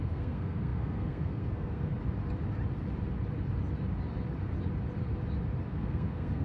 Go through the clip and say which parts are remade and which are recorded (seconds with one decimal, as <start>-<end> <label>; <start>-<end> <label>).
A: 0.0-1.9 remade; 1.9-5.7 recorded; 5.7-6.4 remade